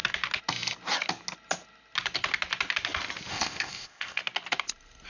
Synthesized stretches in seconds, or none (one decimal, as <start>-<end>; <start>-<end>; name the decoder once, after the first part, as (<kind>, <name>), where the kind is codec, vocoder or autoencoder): 3.3-4.2 (codec, ZipCodec)